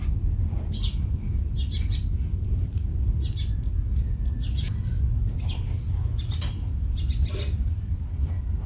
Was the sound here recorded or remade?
recorded